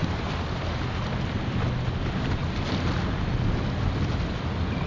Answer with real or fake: real